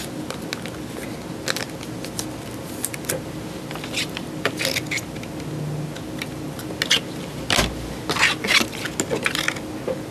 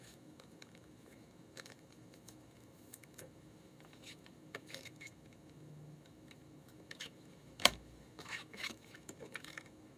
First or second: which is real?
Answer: first